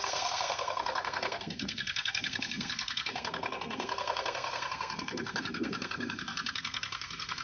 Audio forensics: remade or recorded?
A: remade